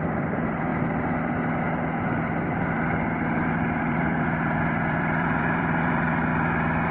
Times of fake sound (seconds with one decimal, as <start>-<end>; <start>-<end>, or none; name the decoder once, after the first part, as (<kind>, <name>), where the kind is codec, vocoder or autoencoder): 0.0-0.7 (vocoder, BigVGAN v2); 3.8-6.3